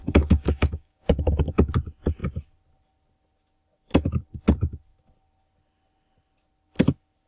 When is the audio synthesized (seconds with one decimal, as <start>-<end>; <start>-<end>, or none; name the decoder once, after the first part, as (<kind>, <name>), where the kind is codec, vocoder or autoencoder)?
0.0-1.7 (codec, DAC)